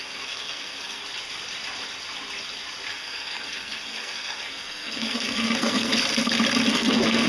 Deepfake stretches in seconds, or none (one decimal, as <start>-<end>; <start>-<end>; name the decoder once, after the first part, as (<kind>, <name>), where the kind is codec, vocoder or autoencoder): 0.0-1.0 (codec, SNAC); 2.9-5.9; 6.7-7.3